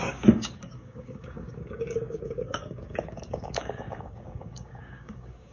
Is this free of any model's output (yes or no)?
no